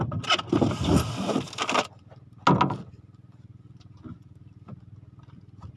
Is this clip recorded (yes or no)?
yes